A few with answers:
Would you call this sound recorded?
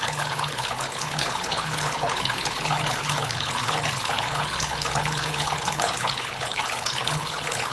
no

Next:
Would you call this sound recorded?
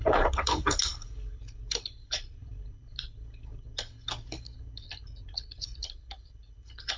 no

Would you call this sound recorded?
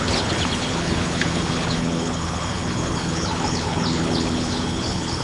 no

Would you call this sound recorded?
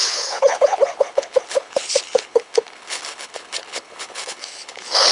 no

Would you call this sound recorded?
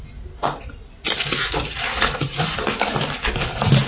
yes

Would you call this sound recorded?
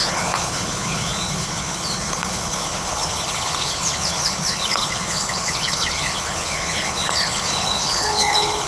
no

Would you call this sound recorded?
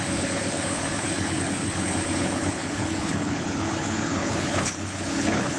no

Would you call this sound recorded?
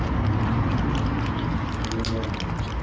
yes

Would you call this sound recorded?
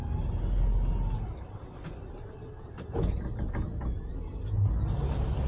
yes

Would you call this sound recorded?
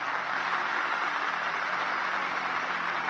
yes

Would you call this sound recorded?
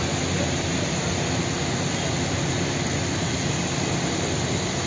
yes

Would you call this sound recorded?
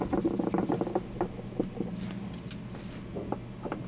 yes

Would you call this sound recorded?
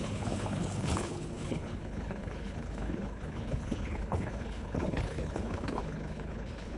no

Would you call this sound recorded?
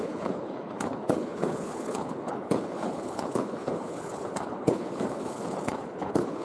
no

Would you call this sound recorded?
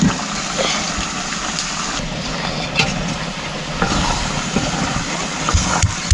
yes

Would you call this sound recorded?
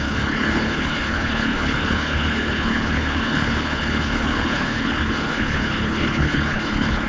no